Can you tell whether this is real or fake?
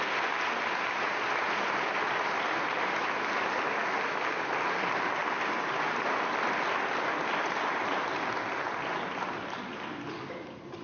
real